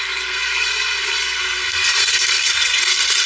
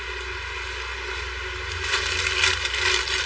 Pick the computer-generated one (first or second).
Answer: first